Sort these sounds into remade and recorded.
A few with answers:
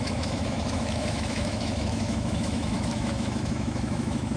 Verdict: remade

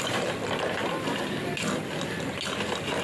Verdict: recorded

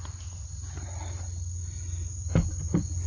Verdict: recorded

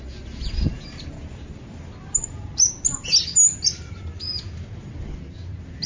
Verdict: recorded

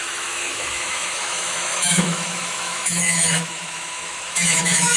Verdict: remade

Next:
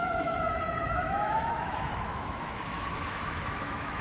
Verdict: remade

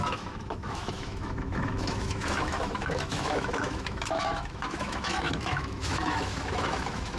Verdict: remade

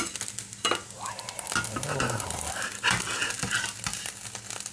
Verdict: recorded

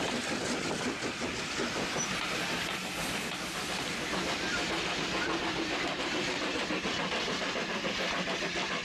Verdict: recorded